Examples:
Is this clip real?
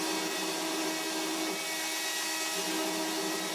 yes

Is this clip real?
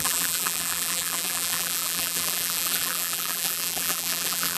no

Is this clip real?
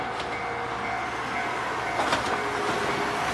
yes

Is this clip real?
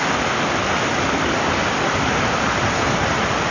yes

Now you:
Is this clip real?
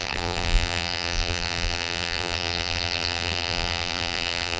no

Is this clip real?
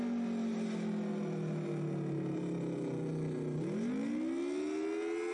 yes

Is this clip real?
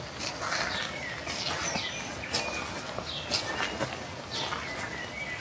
yes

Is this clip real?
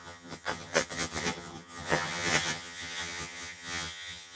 no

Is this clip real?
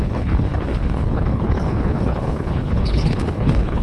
no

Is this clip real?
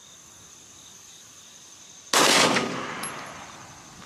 yes